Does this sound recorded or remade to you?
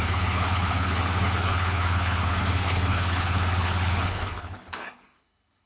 remade